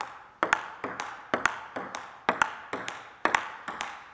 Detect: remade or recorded recorded